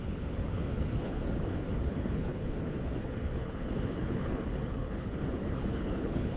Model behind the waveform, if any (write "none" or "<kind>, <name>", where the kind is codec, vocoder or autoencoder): codec, HILCodec